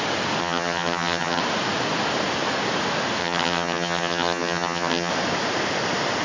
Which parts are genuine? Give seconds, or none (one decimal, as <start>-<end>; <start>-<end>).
0.0-0.4; 1.4-3.2; 5.1-6.2